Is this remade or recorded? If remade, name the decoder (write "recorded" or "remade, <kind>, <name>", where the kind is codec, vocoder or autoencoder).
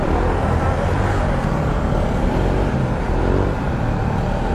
recorded